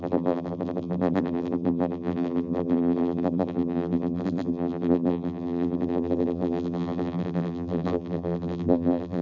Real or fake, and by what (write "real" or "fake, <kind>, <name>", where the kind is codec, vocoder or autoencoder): fake, vocoder, BigVGAN v2